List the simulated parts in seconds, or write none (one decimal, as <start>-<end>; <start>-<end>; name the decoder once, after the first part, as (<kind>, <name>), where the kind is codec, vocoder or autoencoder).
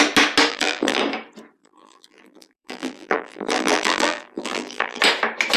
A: 0.5-1.0 (vocoder, BigVGAN v2); 1.6-5.0